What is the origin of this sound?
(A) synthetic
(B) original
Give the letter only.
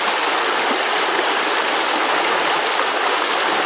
B